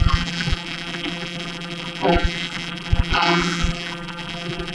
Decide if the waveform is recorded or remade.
remade